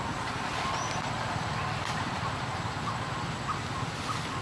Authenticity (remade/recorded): recorded